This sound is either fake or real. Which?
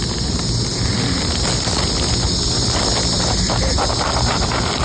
real